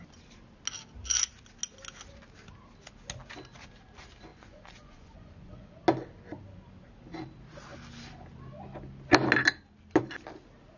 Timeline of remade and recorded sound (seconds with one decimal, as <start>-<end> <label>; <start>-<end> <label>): 0.0-4.3 recorded; 4.3-5.8 remade; 5.8-10.8 recorded